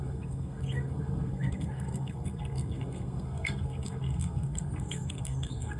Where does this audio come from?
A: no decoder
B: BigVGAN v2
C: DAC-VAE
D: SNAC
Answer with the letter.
D